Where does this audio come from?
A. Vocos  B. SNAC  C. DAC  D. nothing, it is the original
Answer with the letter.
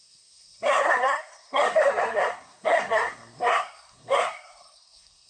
B